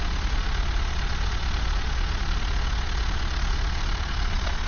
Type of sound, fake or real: fake